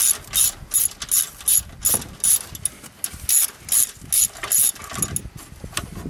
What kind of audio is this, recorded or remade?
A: recorded